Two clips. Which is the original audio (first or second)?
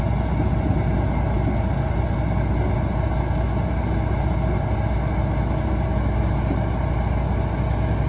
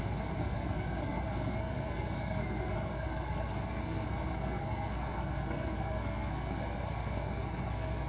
first